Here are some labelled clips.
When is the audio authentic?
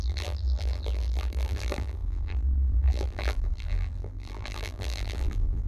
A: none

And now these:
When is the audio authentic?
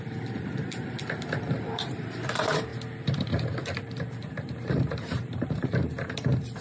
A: 2.7-3.6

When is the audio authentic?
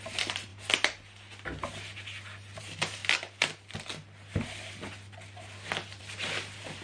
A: 0.5-2.6; 3.0-6.0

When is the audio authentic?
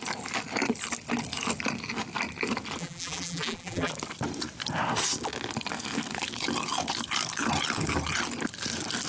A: 0.0-2.8; 3.9-9.1